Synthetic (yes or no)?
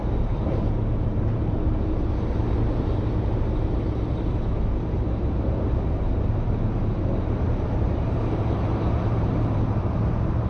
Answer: yes